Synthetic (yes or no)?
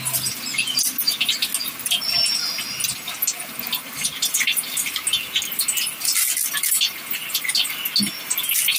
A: no